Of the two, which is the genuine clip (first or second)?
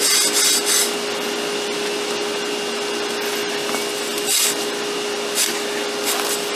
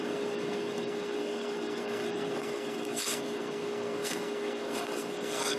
first